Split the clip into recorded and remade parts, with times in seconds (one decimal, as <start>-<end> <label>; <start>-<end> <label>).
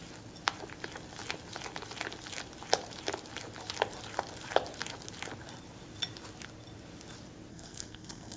0.0-7.5 recorded; 7.5-8.4 remade